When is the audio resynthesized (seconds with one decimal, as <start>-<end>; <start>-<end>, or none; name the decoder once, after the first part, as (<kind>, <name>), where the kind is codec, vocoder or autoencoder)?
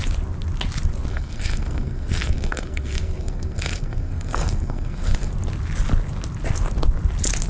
1.1-5.3 (codec, SNAC)